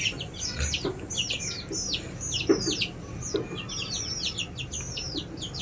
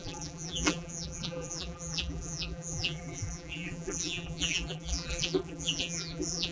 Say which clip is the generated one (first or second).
second